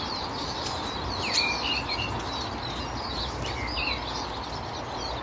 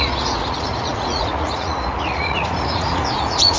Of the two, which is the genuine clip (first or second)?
first